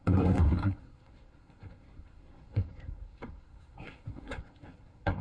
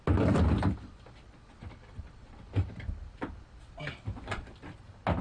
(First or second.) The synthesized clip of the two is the first